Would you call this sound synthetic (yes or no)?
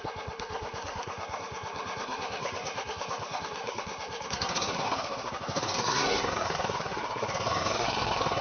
yes